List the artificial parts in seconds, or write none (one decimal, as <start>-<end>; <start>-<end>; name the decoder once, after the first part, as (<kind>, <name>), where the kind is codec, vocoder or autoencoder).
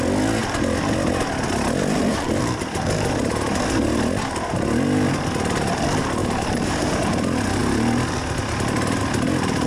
6.2-7.1 (vocoder, BigVGAN v2)